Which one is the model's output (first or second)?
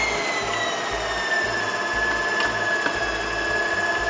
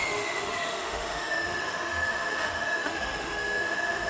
second